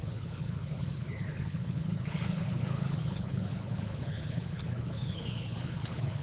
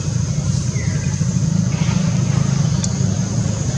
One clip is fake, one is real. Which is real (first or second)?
second